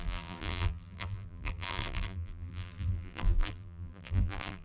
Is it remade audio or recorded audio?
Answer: remade